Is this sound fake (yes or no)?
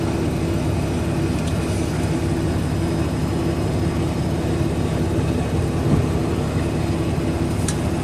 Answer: no